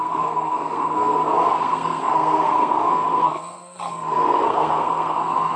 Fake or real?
fake